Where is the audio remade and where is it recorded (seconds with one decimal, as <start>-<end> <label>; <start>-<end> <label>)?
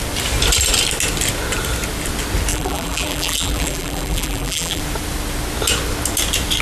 0.0-2.5 recorded; 2.5-4.8 remade; 4.8-6.6 recorded